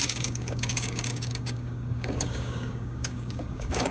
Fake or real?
fake